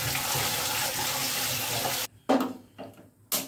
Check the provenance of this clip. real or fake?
real